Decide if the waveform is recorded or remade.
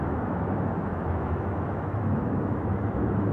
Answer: remade